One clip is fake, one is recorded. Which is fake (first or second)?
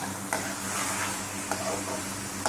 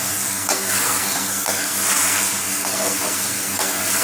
second